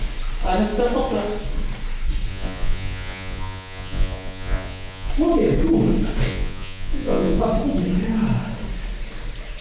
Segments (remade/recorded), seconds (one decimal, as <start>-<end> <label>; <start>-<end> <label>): 0.0-2.3 recorded; 2.3-5.1 remade; 5.1-6.3 recorded; 6.3-7.4 remade; 7.4-9.6 recorded